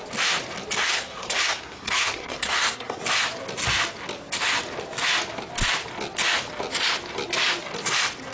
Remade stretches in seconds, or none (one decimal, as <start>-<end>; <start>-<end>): 0.8-3.0